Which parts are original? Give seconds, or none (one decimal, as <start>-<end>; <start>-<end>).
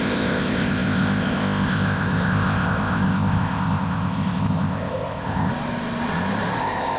5.5-6.6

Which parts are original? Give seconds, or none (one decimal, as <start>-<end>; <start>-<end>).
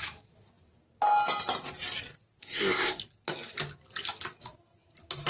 0.0-2.4; 3.0-5.3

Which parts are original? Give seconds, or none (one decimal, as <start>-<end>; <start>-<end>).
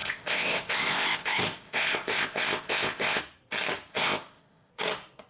3.2-3.9; 4.7-5.3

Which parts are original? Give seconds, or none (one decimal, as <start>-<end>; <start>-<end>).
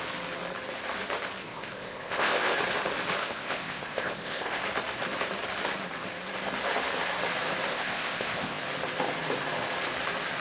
0.0-1.4; 2.6-3.2; 4.6-7.7; 8.6-10.4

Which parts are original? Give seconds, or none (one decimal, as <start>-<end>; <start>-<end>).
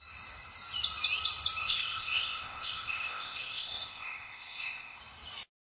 0.0-1.6; 5.0-5.7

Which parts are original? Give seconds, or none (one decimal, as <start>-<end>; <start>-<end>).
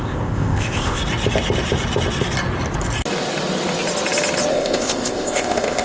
1.0-4.5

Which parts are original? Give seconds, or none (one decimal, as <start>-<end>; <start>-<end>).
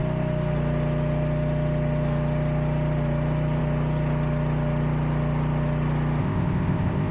0.0-6.2